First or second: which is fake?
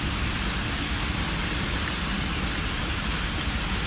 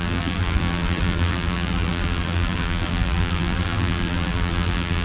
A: second